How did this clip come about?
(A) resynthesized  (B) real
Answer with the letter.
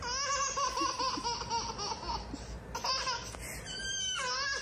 B